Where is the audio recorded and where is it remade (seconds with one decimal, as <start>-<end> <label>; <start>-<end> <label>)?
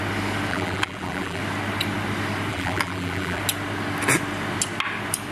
0.0-0.5 recorded; 0.5-1.4 remade; 1.4-2.5 recorded; 2.5-3.4 remade; 3.4-5.3 recorded